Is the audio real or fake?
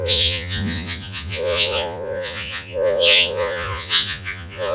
fake